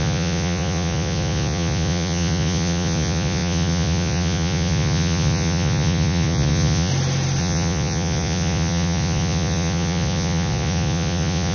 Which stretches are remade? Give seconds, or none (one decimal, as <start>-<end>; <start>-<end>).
0.0-6.9; 7.4-11.5